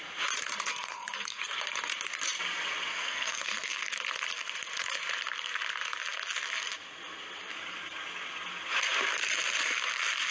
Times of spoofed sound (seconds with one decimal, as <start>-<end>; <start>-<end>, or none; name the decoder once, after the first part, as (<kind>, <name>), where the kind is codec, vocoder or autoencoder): 0.7-1.4 (codec, SNAC); 2.9-3.8

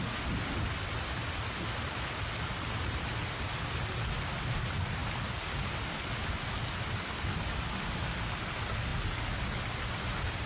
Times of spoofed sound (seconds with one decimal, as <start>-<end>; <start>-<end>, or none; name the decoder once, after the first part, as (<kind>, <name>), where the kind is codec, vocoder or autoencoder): none

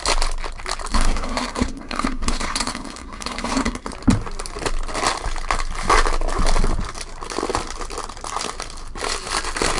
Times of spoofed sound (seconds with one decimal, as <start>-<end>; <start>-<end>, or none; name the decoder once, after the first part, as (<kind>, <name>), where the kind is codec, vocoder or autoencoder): 0.9-3.9 (codec, SNAC)

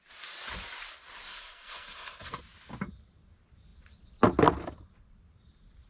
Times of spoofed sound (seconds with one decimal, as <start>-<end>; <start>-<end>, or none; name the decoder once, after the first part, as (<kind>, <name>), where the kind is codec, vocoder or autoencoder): 1.3-2.4 (codec, SNAC)

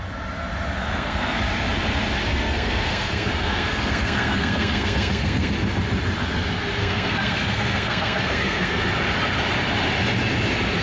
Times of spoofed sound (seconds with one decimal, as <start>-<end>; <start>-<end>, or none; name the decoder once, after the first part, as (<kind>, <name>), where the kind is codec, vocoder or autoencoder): 0.8-1.4 (codec, SNAC); 2.3-5.5; 6.8-8.8

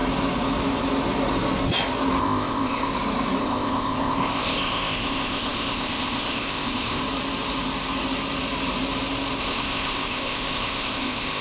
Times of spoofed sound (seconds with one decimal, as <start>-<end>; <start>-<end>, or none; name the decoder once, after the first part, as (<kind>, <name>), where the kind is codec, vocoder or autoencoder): 2.2-2.9 (codec, ZipCodec); 3.4-7.0; 9.4-11.4

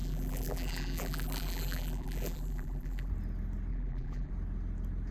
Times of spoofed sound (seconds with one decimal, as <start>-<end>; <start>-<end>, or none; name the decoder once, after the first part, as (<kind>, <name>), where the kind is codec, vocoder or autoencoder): 0.0-3.1 (vocoder, BigVGAN v2); 3.7-4.3